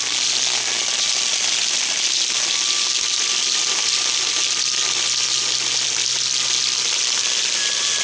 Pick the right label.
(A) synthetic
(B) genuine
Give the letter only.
B